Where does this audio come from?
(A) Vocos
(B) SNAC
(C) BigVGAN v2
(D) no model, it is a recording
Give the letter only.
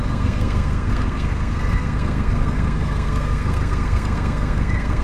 B